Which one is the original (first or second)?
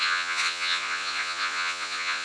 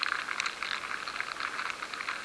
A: second